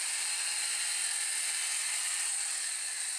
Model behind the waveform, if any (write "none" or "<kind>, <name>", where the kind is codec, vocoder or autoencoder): none